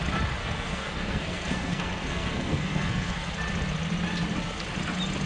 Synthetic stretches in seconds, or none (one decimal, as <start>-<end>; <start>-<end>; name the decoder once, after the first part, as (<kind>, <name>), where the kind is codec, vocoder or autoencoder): 0.4-3.3 (codec, SNAC)